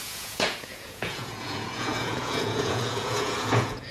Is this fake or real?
fake